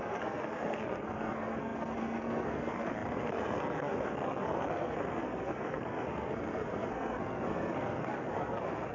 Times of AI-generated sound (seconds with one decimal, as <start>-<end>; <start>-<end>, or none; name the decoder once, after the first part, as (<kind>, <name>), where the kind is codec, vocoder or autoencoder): 0.0-8.9 (codec, SNAC)